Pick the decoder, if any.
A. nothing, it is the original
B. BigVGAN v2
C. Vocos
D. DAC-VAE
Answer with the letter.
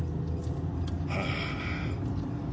A